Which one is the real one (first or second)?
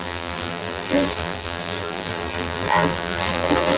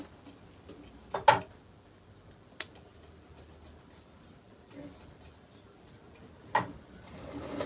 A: second